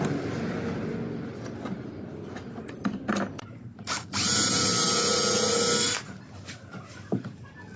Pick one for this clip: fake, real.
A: real